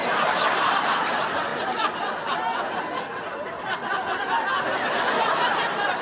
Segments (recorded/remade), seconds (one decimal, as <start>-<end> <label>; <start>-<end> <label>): 0.0-1.1 remade; 1.1-6.0 recorded